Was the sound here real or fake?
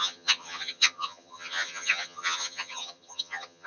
fake